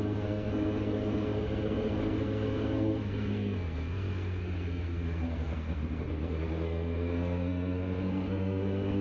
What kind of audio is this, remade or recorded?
remade